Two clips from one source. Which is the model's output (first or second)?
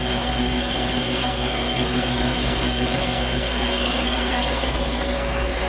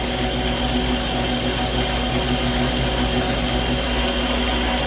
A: first